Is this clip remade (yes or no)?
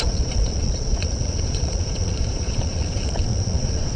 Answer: yes